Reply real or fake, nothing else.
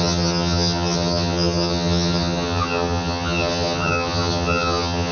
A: fake